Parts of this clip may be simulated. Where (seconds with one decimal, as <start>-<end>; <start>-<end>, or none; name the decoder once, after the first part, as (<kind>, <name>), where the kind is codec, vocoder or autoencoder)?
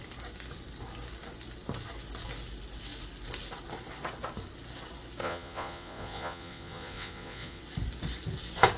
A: 5.2-7.6 (vocoder, Vocos)